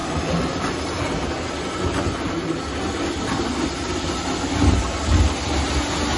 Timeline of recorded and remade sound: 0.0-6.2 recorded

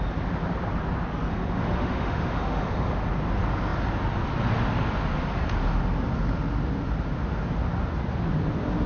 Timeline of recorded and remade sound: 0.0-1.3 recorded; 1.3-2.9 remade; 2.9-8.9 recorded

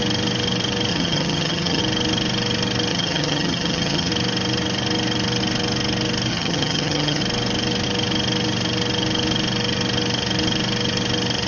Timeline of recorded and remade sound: 0.0-0.9 recorded; 0.9-1.8 remade; 1.8-2.9 recorded; 2.9-4.1 remade; 4.1-6.3 recorded; 6.3-7.2 remade; 7.2-11.5 recorded